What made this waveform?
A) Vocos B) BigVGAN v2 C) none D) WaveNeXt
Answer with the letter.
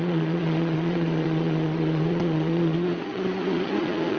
A